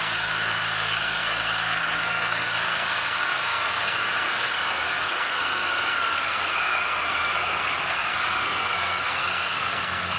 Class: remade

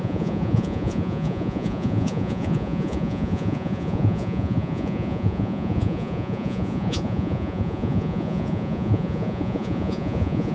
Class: remade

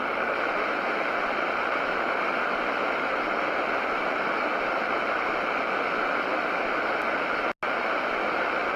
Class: recorded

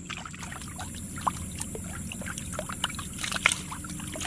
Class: recorded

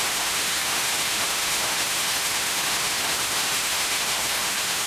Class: remade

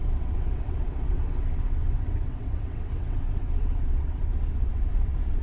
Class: remade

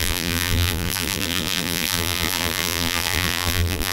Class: remade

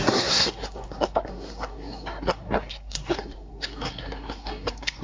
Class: remade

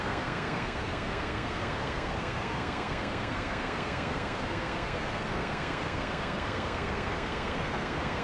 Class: remade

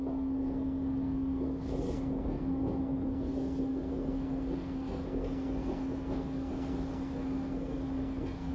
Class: remade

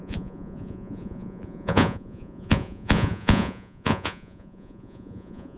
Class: remade